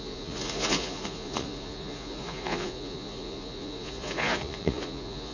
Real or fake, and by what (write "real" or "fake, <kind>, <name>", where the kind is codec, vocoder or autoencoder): fake, vocoder, Vocos